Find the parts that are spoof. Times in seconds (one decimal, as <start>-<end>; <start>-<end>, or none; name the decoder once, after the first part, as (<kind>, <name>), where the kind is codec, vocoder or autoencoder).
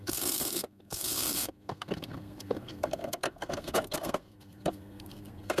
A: 0.0-5.6 (codec, SNAC)